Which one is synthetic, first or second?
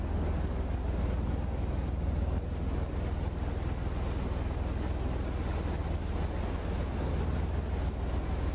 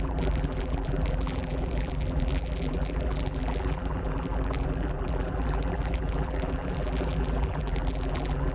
second